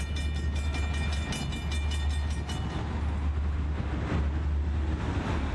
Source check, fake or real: real